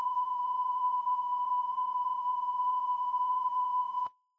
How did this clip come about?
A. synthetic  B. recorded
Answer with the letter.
A